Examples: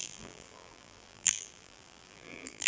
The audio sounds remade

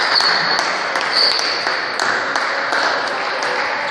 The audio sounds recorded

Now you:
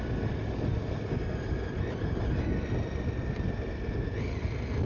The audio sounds recorded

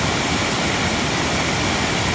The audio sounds remade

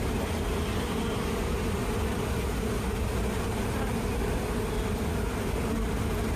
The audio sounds recorded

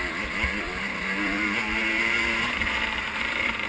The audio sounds remade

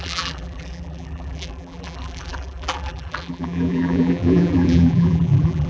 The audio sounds remade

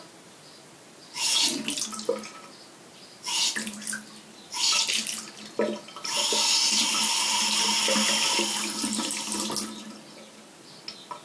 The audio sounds recorded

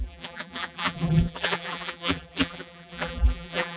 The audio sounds remade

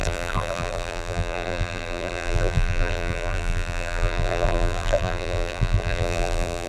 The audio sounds remade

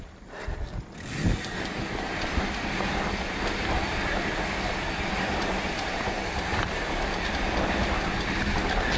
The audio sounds recorded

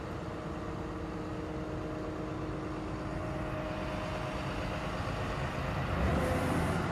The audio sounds recorded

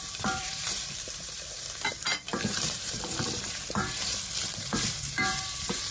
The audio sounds remade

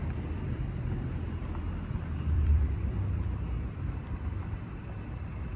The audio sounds remade